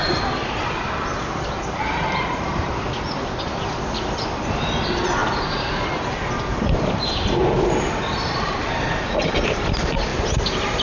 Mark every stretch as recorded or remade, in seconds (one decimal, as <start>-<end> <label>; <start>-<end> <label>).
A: 0.0-0.6 recorded; 0.6-2.7 remade; 2.7-5.2 recorded; 5.2-9.2 remade; 9.2-10.1 recorded; 10.1-10.8 remade